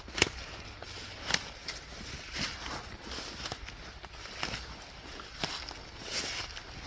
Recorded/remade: recorded